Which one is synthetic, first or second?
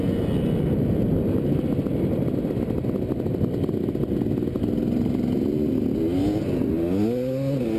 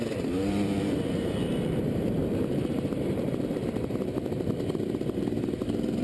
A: second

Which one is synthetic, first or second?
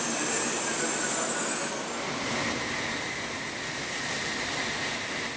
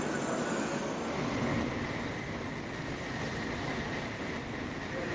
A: second